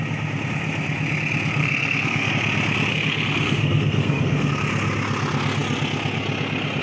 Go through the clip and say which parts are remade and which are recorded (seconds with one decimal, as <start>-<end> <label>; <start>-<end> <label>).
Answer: 0.0-1.6 recorded; 1.6-2.3 remade; 2.3-2.9 recorded; 2.9-4.5 remade; 4.5-6.8 recorded